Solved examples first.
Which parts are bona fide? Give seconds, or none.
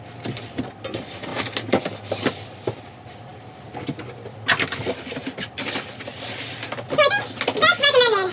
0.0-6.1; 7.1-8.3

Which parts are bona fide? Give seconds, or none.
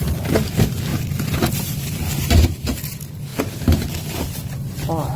0.0-5.2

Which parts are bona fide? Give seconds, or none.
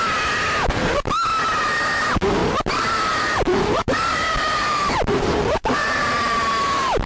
0.0-2.4